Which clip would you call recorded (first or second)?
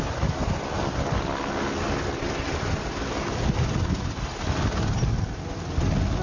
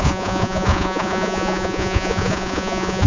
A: first